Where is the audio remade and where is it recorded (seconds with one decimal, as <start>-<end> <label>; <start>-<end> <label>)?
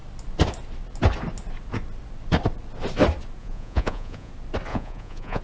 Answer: 0.0-3.4 recorded; 3.4-4.3 remade; 4.3-4.7 recorded; 4.7-5.4 remade